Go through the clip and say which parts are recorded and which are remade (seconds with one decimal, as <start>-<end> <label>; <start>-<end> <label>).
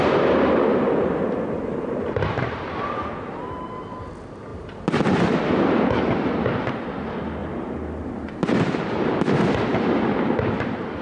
0.0-11.0 recorded